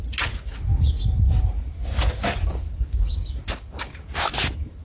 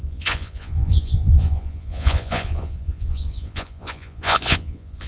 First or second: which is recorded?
first